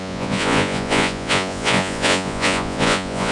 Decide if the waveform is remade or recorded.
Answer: remade